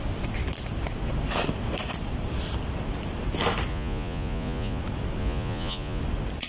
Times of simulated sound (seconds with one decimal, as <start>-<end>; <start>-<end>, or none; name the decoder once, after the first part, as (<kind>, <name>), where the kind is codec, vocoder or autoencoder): 3.7-4.8 (vocoder, Vocos); 5.2-6.0